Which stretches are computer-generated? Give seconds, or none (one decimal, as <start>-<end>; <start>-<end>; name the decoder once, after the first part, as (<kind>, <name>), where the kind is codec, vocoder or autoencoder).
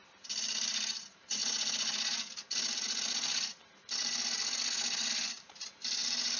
0.0-1.4 (vocoder, BigVGAN v2); 5.1-6.4